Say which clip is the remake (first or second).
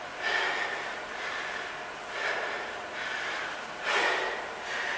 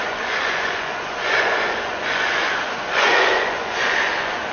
second